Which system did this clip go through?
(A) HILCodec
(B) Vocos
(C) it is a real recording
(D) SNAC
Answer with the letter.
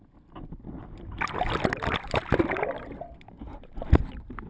C